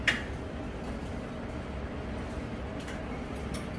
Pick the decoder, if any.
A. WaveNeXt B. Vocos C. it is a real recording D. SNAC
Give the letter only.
C